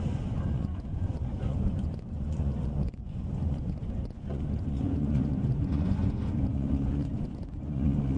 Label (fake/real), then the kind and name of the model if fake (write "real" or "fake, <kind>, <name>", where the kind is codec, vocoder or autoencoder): fake, vocoder, Vocos